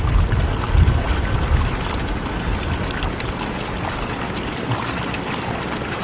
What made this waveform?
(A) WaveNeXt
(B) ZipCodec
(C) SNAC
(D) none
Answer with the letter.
D